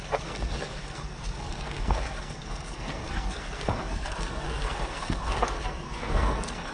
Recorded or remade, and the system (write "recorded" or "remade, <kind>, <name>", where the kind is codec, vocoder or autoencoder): remade, codec, SNAC